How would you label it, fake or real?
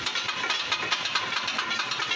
fake